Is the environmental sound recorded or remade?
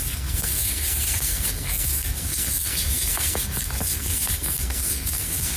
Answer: remade